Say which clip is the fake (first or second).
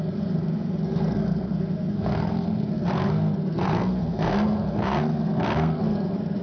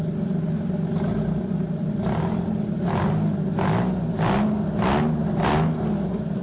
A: first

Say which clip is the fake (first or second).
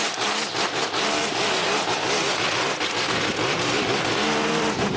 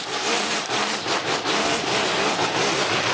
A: second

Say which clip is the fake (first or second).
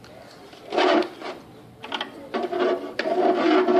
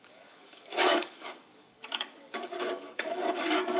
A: second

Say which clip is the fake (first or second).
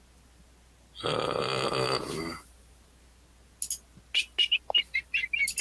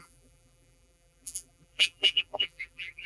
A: second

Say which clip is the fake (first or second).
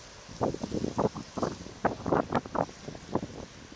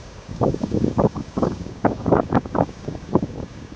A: second